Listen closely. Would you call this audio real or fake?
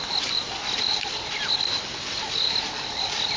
real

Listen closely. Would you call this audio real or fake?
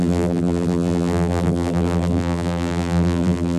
fake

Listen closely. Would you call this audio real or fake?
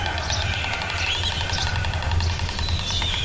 real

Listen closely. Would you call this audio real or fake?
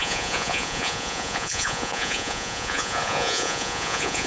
fake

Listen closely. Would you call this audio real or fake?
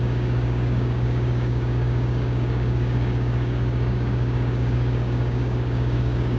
fake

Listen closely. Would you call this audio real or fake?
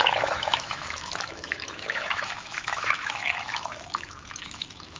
fake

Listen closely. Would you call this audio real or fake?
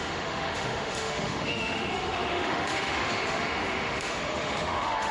fake